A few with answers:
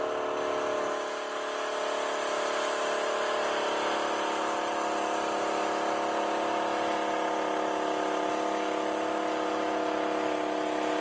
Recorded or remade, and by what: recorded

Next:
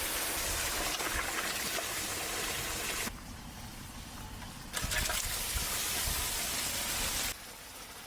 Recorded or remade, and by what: recorded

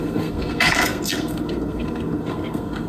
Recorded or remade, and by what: remade, codec, SNAC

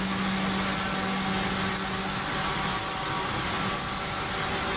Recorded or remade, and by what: recorded